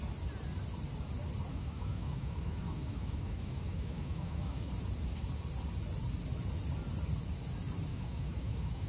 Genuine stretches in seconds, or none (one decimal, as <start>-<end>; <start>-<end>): 0.0-1.5; 4.7-7.9